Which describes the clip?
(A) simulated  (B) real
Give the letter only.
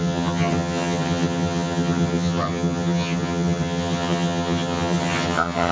A